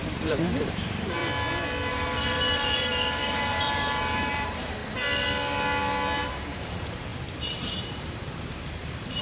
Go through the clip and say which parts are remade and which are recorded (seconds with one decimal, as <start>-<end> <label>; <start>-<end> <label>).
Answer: 0.0-1.2 remade; 1.2-1.9 recorded; 1.9-4.8 remade; 4.8-6.2 recorded; 6.2-9.2 remade